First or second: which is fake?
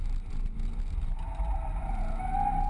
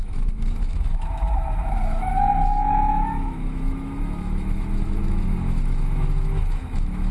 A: second